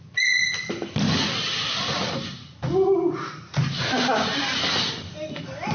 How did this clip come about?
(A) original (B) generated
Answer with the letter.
A